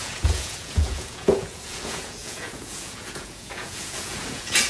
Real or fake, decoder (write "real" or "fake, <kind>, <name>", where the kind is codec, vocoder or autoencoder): fake, vocoder, Vocos